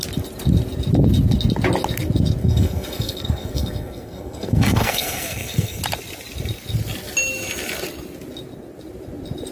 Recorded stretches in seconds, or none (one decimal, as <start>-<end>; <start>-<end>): 0.0-2.4; 5.8-9.5